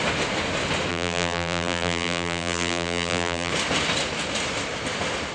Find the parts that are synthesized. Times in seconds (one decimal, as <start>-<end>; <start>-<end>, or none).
0.9-3.5